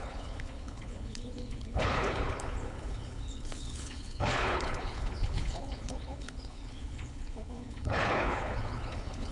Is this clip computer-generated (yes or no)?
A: yes